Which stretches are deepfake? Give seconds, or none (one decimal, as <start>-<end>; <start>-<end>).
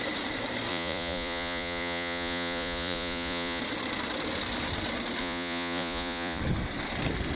0.7-3.6; 5.2-6.4